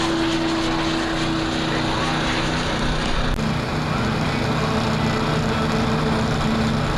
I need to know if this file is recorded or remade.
recorded